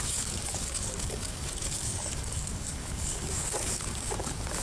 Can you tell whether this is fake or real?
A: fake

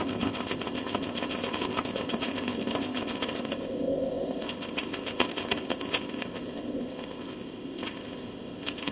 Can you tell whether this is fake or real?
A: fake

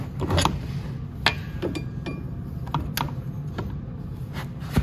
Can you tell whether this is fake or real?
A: real